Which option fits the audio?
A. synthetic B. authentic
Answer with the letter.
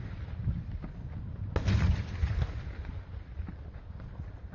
B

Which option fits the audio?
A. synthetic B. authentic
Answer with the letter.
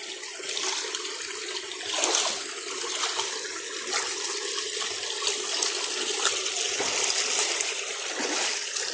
B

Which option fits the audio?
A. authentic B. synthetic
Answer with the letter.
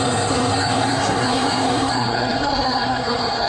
B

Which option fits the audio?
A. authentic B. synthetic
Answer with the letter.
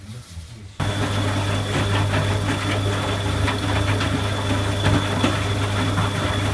A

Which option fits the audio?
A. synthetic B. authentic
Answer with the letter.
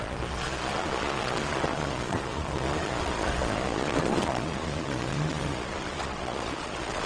A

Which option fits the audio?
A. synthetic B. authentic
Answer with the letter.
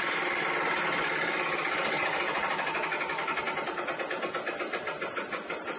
B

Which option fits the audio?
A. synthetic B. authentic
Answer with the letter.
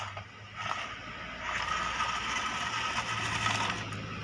B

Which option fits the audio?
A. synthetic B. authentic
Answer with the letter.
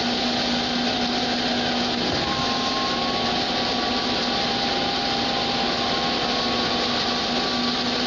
B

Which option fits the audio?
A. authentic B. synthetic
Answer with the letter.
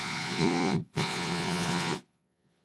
B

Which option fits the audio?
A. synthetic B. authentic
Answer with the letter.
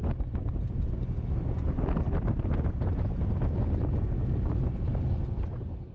B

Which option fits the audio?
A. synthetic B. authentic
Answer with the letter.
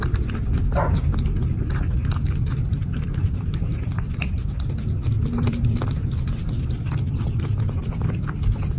A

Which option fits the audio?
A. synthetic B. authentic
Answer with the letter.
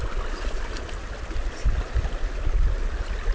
B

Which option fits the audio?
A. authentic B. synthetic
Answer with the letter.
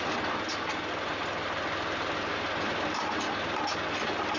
A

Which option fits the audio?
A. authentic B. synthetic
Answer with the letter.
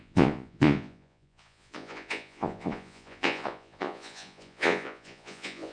B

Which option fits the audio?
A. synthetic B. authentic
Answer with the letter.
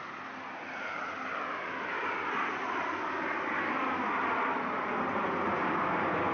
B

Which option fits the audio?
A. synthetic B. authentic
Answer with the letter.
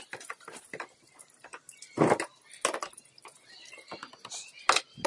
B